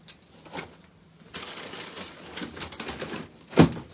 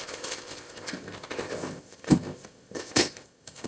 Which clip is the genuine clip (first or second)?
first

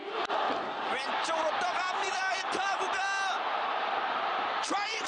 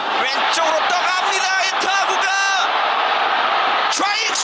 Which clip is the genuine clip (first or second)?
second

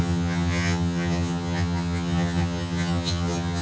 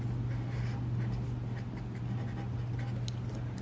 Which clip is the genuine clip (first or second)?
second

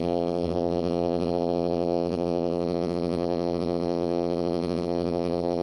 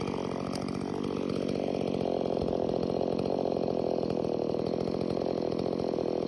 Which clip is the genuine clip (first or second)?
second